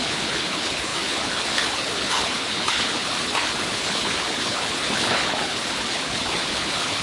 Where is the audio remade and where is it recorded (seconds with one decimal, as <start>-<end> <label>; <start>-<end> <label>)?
0.0-7.0 remade